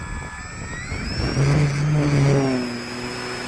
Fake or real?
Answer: real